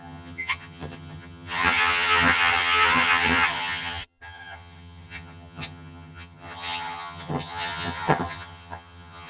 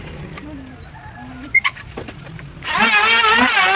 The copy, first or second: first